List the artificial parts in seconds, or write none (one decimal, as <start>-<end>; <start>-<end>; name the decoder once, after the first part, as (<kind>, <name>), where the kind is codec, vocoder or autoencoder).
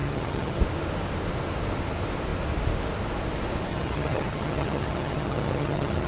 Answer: 0.0-0.6 (vocoder, HiFi-GAN); 3.7-6.1